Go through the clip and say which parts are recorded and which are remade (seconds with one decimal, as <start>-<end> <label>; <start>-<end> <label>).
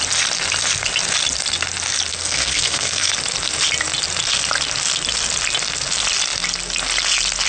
0.0-2.1 recorded; 2.1-3.1 remade; 3.1-7.5 recorded